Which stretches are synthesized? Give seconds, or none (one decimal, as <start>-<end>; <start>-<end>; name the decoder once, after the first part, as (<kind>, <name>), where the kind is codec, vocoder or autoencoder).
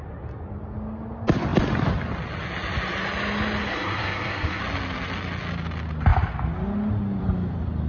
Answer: 3.7-4.6 (codec, SNAC)